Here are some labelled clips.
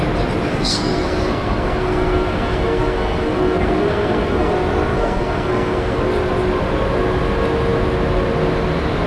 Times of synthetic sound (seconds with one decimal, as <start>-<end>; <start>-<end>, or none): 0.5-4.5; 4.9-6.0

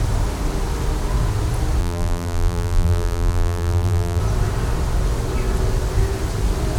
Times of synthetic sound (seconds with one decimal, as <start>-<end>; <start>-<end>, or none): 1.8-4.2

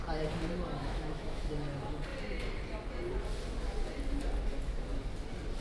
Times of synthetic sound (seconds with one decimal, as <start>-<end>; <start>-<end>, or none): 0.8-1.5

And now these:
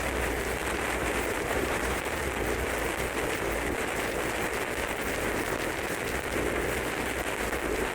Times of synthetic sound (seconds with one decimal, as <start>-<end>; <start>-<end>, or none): 0.6-2.2

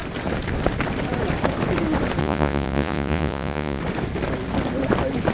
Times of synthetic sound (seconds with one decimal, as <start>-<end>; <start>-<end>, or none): 2.2-3.8